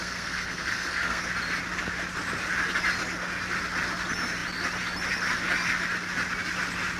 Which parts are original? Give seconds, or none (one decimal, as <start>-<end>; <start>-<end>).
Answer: 1.2-7.0